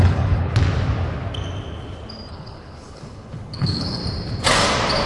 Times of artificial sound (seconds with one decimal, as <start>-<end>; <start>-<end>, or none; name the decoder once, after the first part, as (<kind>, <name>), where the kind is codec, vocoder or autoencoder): 0.0-0.5 (codec, HILCodec); 2.3-4.0